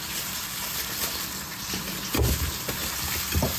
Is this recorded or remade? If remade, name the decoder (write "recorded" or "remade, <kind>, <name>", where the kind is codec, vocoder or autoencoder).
recorded